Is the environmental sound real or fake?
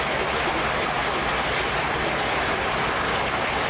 real